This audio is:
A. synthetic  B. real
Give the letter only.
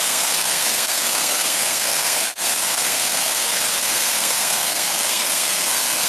A